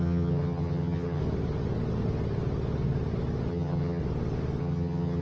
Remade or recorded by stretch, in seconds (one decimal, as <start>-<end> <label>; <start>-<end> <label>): 0.0-1.2 remade; 1.2-3.5 recorded; 3.5-4.0 remade; 4.0-4.6 recorded; 4.6-5.2 remade